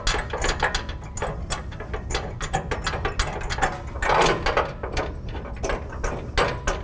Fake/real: real